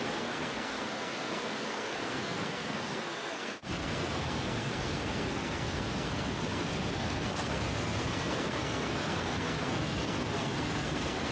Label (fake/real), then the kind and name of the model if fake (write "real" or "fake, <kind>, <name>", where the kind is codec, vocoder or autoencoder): fake, codec, SNAC